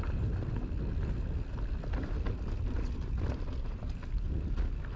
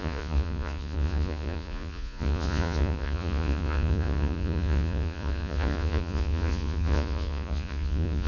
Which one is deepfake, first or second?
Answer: second